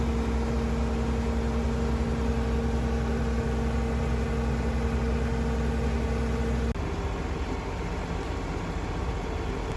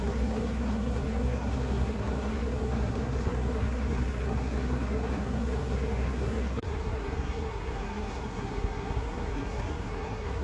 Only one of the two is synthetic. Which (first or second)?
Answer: second